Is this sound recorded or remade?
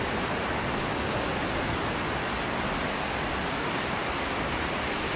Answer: recorded